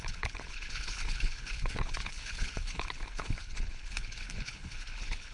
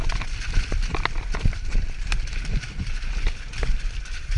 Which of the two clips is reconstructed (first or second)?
first